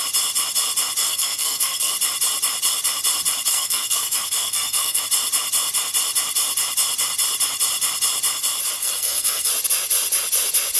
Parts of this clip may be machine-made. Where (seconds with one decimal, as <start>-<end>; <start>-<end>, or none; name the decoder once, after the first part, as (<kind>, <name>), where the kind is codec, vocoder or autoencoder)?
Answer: 1.0-1.9 (codec, SNAC); 3.5-5.0; 8.8-9.5

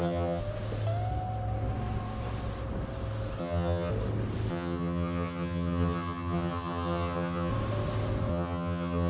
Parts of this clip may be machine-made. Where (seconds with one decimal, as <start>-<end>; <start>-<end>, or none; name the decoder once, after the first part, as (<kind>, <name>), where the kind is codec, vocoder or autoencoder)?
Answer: 0.0-0.4 (vocoder, HiFi-GAN); 3.4-3.9; 4.5-7.5; 8.3-9.1

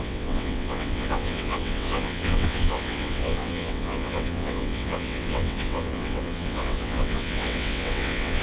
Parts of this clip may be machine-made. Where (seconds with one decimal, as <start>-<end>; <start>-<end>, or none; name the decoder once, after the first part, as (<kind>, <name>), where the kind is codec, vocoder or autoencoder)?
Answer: 0.0-8.4 (vocoder, WaveNeXt)

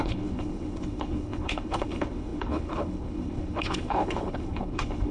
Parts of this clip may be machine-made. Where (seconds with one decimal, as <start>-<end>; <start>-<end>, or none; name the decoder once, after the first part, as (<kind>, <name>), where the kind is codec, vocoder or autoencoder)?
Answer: 0.0-5.1 (codec, HILCodec)

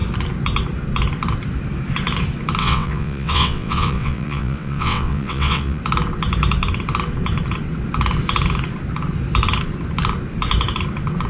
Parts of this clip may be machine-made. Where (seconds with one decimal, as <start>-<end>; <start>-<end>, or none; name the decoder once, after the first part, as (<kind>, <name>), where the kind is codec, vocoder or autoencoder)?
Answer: 2.6-5.8 (vocoder, WaveNeXt)

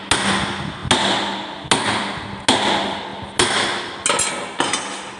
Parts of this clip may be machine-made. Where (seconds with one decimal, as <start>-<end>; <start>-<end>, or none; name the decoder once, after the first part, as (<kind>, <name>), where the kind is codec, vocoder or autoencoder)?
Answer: none

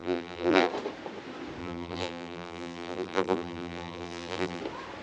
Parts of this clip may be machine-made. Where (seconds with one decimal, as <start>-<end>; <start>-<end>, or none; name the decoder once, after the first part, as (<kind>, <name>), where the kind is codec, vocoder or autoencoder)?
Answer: 0.0-0.7 (vocoder, BigVGAN v2); 1.6-4.6

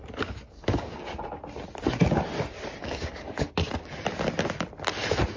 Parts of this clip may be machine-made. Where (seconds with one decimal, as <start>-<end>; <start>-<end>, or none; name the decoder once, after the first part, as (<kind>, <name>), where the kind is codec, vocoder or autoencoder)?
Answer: 0.0-1.0 (codec, DAC); 2.8-3.5